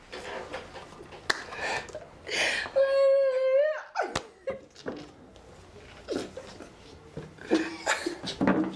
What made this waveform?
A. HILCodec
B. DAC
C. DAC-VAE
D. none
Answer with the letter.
D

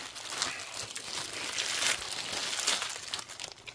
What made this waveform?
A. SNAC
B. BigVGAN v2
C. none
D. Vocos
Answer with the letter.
C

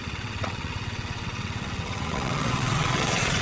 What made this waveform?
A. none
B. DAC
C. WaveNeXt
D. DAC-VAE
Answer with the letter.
C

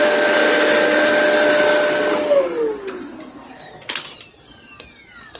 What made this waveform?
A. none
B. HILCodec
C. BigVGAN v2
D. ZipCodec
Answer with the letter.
A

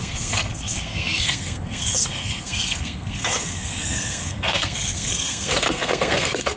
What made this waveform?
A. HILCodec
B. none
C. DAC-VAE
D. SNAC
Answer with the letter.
D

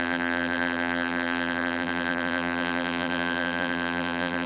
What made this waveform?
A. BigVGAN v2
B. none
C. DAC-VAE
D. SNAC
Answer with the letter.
A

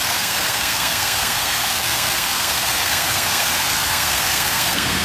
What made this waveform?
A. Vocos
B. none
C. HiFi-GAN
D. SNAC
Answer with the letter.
D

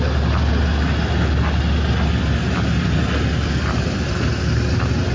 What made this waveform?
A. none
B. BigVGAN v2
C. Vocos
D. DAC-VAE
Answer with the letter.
A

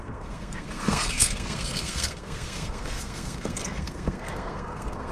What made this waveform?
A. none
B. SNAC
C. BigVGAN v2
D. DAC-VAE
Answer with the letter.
B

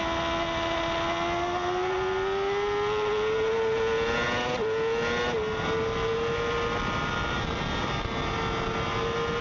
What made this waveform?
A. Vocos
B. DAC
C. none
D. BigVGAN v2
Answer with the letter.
C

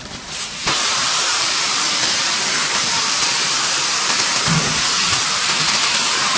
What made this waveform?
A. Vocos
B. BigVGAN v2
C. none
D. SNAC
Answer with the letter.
B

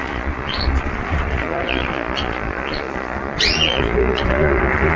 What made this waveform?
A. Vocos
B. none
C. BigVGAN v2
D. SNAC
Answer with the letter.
A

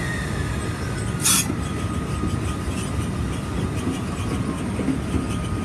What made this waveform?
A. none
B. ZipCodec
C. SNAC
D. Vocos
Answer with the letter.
A